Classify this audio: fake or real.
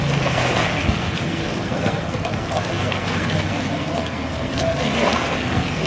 fake